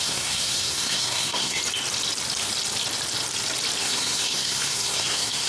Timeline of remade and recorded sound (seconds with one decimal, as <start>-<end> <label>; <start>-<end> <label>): 0.0-1.6 remade; 1.6-3.8 recorded; 3.8-5.5 remade